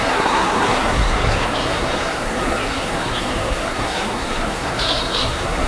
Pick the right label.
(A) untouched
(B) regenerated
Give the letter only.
B